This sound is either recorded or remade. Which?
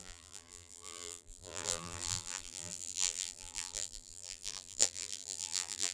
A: remade